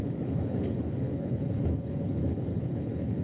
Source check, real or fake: fake